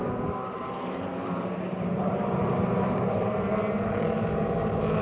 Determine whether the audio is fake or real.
fake